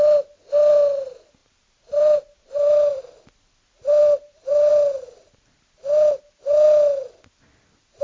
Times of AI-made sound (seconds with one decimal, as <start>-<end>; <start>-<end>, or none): 1.4-3.0; 4.0-4.7